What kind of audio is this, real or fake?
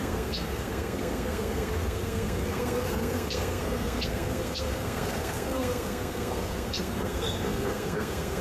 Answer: fake